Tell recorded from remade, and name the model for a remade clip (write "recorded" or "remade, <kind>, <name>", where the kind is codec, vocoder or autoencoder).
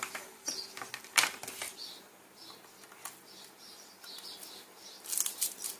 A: recorded